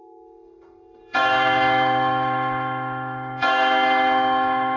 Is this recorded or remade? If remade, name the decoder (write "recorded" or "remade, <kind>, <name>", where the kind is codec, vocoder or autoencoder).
remade, autoencoder, DAC-VAE